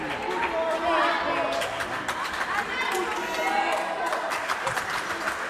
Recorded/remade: recorded